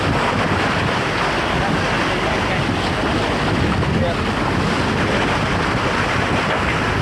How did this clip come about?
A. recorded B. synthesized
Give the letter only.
A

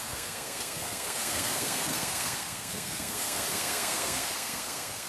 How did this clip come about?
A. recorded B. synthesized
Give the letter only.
B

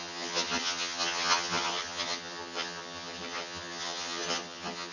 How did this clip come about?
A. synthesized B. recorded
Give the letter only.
A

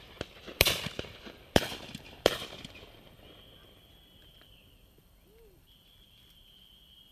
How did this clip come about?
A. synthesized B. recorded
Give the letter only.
A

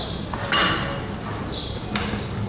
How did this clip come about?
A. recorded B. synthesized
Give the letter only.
A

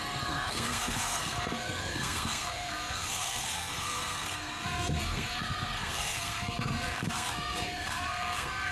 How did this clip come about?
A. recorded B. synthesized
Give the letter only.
B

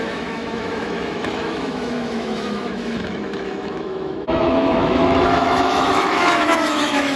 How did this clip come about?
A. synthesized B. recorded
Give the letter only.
A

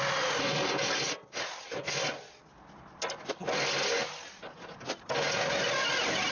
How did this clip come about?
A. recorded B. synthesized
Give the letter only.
A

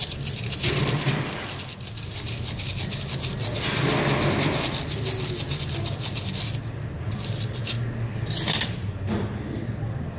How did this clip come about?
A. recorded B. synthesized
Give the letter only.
A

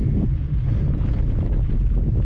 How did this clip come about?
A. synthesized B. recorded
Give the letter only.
B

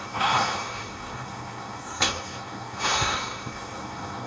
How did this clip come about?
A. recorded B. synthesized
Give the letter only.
B